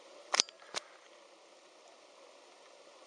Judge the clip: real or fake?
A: real